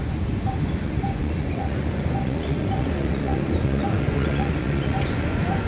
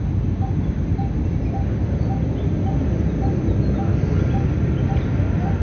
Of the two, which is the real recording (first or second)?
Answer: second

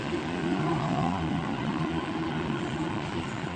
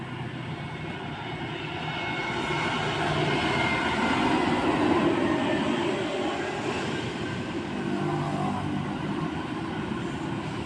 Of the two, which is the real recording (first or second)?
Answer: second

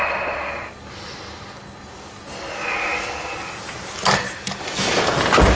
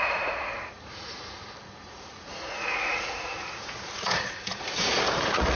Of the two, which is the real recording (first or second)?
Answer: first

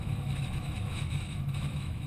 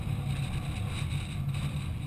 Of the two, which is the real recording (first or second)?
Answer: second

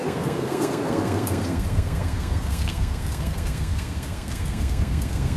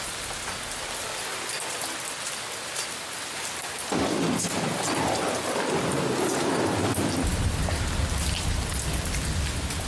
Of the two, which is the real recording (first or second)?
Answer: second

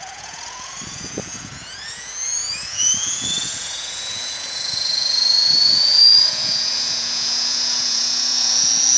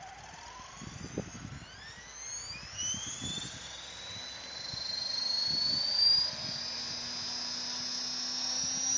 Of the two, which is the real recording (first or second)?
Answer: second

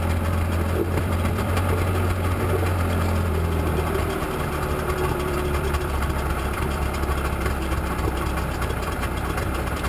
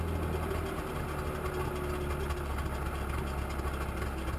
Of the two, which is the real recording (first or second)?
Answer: second